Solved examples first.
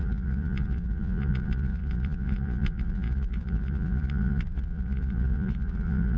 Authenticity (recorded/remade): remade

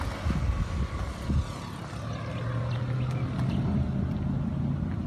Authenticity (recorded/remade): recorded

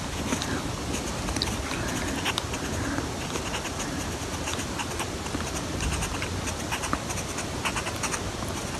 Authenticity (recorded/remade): recorded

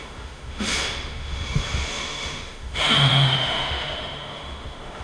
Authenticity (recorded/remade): remade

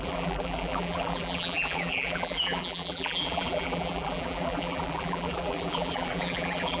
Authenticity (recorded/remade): remade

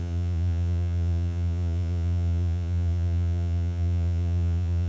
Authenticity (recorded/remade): remade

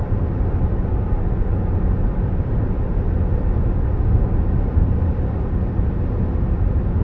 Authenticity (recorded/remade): remade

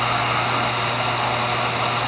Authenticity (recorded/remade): recorded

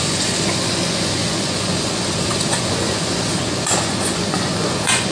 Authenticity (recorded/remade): remade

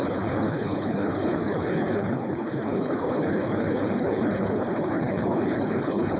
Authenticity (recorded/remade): remade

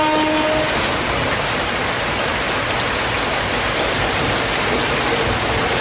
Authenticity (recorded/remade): recorded